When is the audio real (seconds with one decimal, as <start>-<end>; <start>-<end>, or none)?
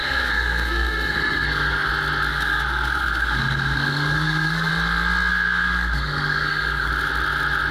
1.9-2.3; 4.7-5.3; 6.9-7.7